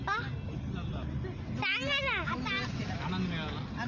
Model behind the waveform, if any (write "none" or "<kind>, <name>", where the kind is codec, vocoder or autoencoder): none